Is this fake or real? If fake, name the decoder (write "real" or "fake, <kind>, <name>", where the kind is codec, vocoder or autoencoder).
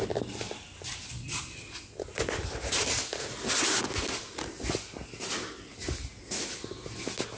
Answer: real